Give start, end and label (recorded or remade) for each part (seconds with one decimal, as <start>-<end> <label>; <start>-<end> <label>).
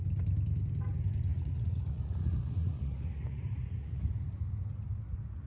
0.0-1.3 recorded; 1.3-4.0 remade; 4.0-5.5 recorded